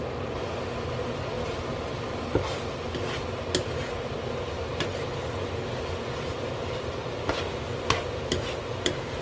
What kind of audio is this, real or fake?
real